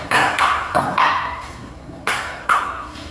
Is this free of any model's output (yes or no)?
no